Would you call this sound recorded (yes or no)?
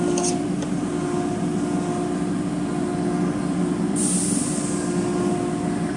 yes